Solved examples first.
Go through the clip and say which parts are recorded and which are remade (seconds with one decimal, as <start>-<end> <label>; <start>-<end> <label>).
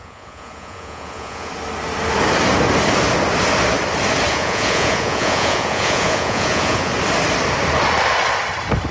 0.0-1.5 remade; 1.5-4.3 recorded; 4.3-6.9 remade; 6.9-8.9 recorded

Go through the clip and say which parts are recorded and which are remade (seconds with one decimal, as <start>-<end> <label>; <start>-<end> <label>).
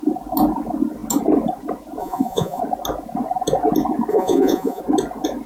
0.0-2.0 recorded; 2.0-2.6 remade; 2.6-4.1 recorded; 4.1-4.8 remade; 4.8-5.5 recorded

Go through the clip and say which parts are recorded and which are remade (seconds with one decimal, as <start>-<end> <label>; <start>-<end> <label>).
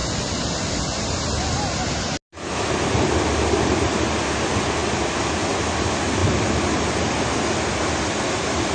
0.0-8.7 recorded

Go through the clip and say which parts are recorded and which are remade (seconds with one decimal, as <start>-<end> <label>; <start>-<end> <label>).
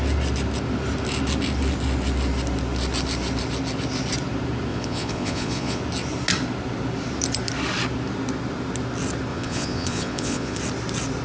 0.0-4.7 recorded; 4.7-5.8 remade; 5.8-9.3 recorded; 9.3-10.6 remade; 10.6-11.2 recorded